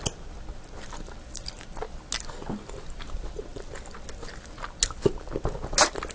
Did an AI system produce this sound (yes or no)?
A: no